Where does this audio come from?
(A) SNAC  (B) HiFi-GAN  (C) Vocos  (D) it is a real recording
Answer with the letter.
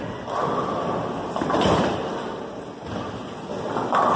D